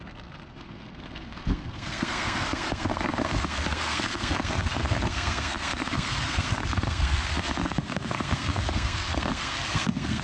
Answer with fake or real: fake